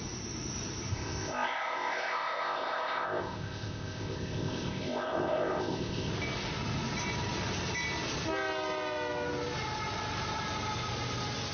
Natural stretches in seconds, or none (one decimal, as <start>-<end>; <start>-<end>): 0.0-0.9; 6.1-11.5